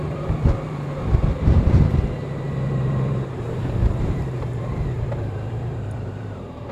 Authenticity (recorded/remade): remade